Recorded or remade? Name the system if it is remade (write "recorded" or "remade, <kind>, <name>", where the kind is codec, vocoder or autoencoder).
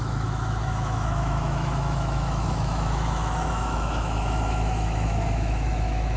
remade, autoencoder, DAC-VAE